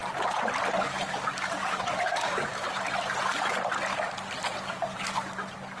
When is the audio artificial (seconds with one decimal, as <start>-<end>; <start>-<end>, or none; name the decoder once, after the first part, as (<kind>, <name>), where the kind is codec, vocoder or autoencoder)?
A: 0.8-2.6 (codec, DAC); 4.6-5.8